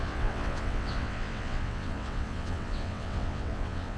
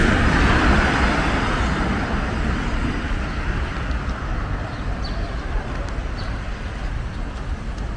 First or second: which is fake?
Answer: first